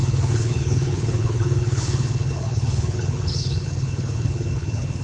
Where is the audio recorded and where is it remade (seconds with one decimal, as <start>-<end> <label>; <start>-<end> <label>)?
0.0-5.0 remade